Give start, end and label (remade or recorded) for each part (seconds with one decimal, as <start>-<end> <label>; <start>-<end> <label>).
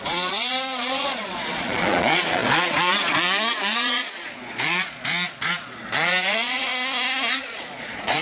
0.0-6.7 remade; 6.7-7.3 recorded; 7.3-8.2 remade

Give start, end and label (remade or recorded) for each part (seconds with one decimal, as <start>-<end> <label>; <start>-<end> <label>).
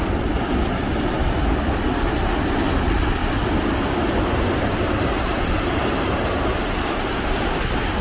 0.0-8.0 recorded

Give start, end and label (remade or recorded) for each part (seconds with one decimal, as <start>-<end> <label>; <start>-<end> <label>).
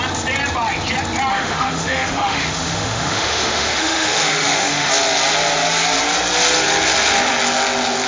0.0-1.3 recorded; 1.3-4.9 remade; 4.9-8.1 recorded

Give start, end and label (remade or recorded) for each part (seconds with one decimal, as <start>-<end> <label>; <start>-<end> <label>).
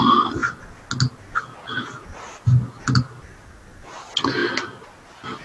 0.0-5.4 recorded